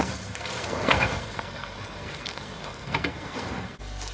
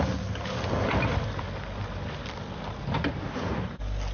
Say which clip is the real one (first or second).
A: second